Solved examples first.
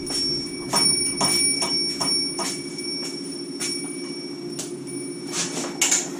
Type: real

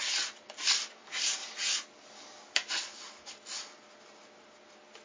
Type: real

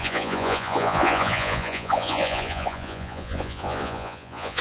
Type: fake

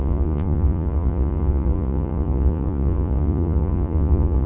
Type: fake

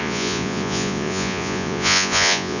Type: fake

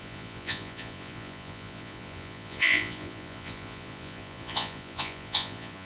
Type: fake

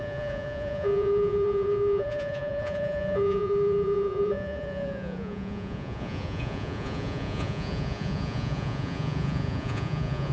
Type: fake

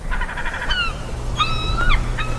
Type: real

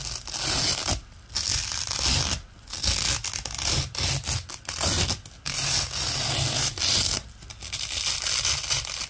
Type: real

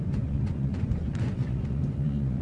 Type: fake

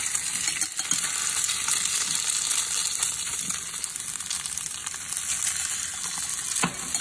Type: real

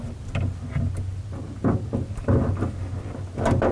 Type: real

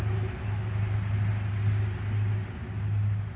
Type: real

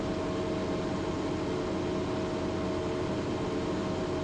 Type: real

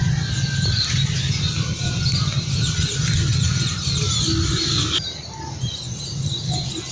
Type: real